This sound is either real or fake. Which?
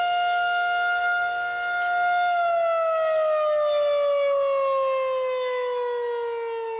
real